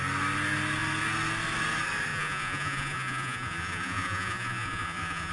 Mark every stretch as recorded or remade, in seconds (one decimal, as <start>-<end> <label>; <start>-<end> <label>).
0.0-2.1 recorded; 2.1-5.3 remade